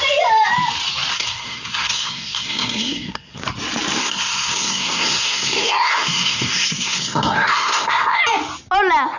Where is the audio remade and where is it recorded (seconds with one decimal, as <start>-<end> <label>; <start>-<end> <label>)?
0.0-1.1 recorded; 1.1-3.4 remade; 3.4-4.0 recorded; 4.0-8.2 remade; 8.2-9.2 recorded